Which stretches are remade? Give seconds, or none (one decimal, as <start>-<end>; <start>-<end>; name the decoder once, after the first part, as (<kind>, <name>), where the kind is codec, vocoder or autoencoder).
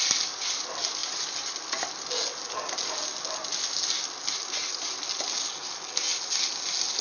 none